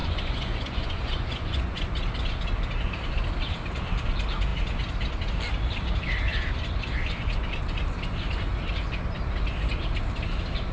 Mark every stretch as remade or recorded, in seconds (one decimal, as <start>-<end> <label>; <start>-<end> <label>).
0.0-1.9 remade; 1.9-10.7 recorded